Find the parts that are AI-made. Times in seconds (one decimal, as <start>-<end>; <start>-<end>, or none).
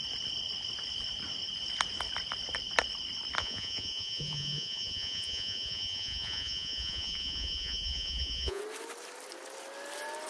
3.4-8.6